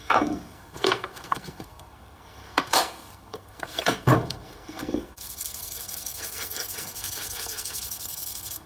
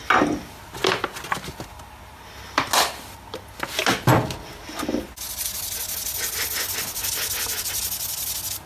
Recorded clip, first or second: second